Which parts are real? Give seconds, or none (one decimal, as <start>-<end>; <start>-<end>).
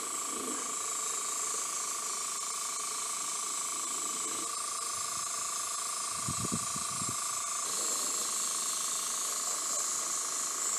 0.0-10.8